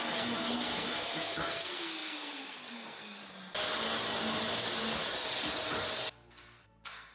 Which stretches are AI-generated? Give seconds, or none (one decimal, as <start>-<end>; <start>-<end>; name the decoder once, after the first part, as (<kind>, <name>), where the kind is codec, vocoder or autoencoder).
0.0-3.2 (codec, SNAC); 6.3-7.1